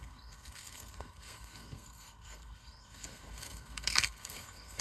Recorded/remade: remade